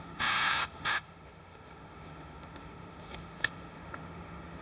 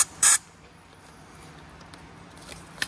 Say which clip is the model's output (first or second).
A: first